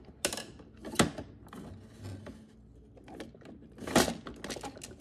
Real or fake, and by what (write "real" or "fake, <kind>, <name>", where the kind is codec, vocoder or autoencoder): real